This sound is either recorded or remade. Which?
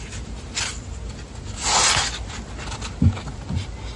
recorded